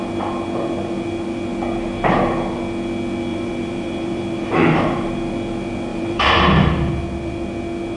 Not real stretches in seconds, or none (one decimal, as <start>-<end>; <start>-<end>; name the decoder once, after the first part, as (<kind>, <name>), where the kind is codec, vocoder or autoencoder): 3.3-5.1 (vocoder, BigVGAN v2); 5.9-6.4